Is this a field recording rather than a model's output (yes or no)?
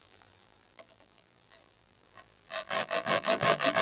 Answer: no